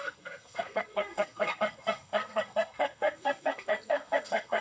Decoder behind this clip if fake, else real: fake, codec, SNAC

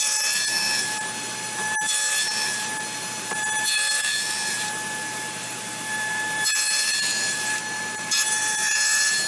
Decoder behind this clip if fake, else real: fake, vocoder, BigVGAN v2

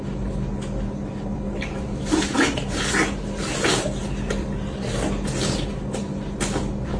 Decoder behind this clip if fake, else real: real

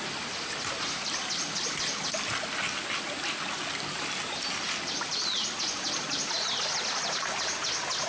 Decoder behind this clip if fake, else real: real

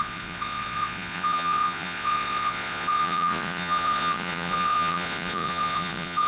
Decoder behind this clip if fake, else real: fake, vocoder, Vocos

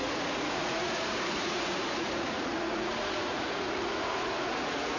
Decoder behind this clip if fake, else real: fake, vocoder, Vocos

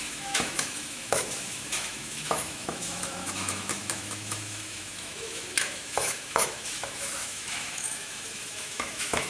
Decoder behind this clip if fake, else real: fake, autoencoder, DAC-VAE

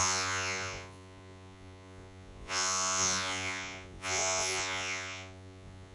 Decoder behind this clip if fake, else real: fake, vocoder, Vocos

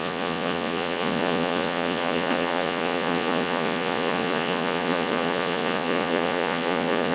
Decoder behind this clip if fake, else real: fake, vocoder, Vocos